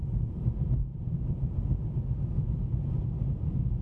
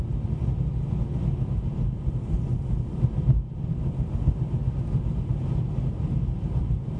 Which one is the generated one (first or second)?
first